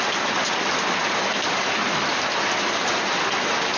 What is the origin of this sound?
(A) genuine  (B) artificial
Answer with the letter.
A